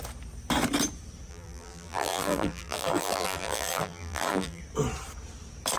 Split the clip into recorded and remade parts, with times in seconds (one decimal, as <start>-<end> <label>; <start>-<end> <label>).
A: 0.0-1.3 recorded; 1.3-4.6 remade; 4.6-5.8 recorded